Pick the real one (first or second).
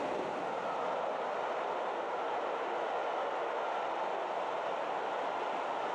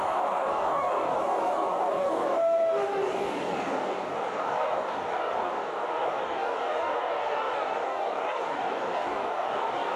first